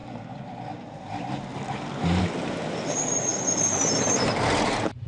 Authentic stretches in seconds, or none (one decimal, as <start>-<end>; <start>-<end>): 0.0-5.1

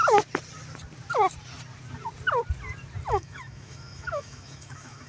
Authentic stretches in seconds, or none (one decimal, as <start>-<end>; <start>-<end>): 0.0-3.1

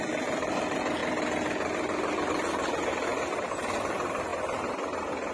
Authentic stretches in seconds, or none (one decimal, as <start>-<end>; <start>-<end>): 0.0-5.3

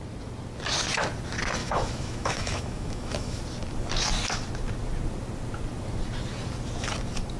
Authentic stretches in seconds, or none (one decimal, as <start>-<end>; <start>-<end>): 0.0-1.6; 3.4-7.4

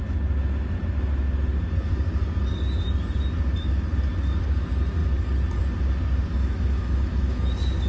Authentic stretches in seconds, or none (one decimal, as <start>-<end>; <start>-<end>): 0.0-6.3; 7.5-7.9

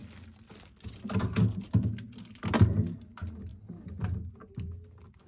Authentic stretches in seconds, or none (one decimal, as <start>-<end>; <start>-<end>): 0.0-5.3